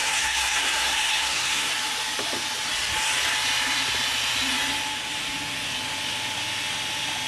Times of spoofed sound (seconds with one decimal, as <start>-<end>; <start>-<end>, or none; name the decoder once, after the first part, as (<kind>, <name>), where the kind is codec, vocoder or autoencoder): 0.0-1.7 (codec, SNAC)